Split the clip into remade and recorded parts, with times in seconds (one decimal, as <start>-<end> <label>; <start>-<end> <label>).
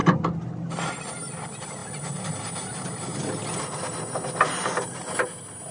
0.0-5.7 recorded